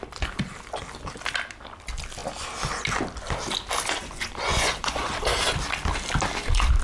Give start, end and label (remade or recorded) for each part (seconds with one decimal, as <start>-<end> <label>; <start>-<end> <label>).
0.0-4.0 recorded; 4.0-5.2 remade; 5.2-6.8 recorded